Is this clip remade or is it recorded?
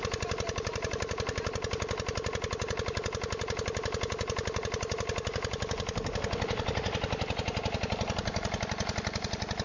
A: recorded